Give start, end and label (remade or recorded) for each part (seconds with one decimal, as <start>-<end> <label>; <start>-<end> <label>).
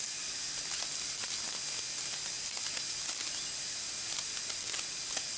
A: 0.0-5.4 recorded